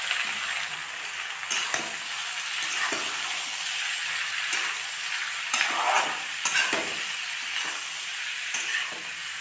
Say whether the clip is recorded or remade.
recorded